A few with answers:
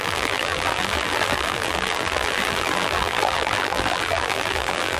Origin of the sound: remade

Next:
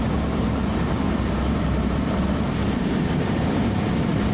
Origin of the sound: remade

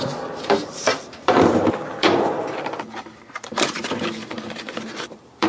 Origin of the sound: remade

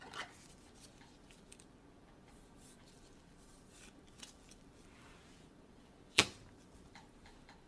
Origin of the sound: remade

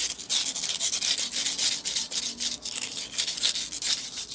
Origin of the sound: recorded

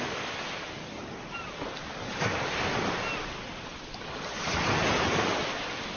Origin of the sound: recorded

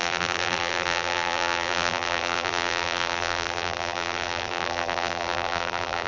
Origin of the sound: remade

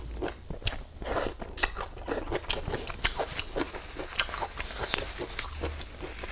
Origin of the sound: recorded